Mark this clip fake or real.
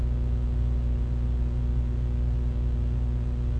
real